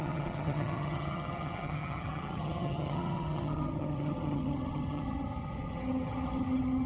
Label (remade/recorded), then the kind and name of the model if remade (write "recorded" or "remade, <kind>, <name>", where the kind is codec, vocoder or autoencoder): remade, vocoder, HiFi-GAN